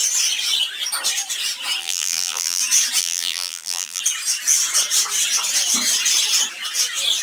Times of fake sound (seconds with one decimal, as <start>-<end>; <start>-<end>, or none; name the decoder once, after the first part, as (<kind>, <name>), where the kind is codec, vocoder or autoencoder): 1.8-2.6 (vocoder, BigVGAN v2); 3.0-4.0